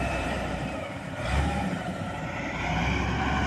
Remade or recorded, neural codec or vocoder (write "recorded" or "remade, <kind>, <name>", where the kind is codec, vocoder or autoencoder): remade, vocoder, BigVGAN v2